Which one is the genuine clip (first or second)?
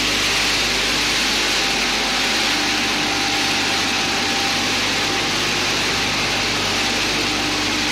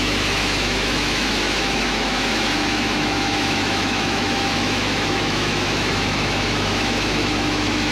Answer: first